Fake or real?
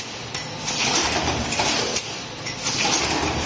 real